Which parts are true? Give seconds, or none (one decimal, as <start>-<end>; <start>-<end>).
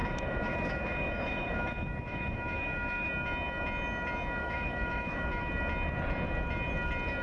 3.1-4.4; 5.5-7.2